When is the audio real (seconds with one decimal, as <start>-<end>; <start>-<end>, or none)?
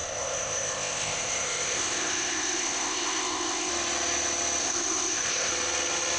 3.7-4.6; 5.5-6.2